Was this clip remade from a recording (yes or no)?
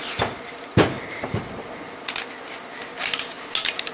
no